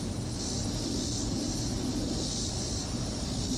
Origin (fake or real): real